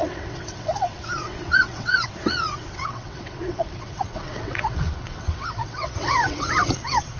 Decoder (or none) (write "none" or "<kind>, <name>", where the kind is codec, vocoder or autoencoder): vocoder, WaveNeXt